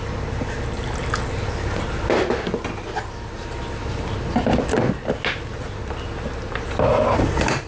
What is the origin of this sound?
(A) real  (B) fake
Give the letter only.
A